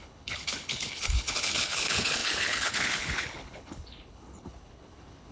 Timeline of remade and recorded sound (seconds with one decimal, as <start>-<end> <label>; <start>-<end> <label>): 0.0-5.3 remade